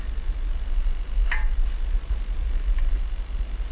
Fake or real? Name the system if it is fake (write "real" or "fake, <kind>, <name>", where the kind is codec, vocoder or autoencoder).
real